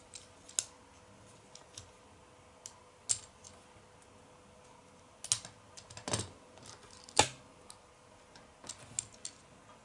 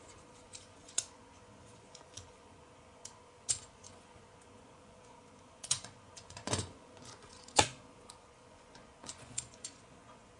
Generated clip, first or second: second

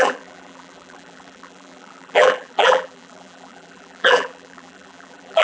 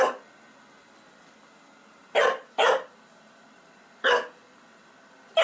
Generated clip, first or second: first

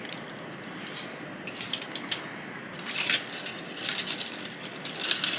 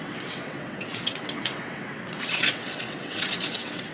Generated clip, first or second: second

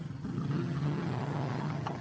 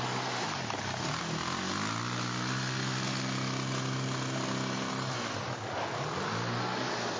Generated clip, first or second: first